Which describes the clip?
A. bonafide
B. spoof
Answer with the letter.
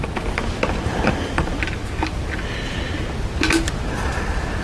A